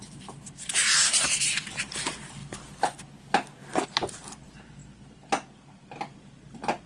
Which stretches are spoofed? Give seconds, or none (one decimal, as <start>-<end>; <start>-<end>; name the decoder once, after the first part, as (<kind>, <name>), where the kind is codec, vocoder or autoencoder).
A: 0.0-2.4 (vocoder, BigVGAN v2); 4.2-4.8